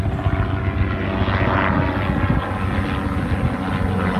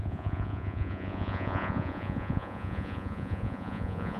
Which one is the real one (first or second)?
first